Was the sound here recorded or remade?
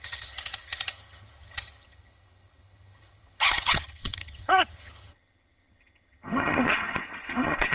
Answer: remade